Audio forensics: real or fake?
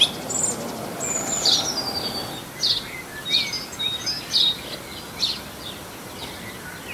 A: real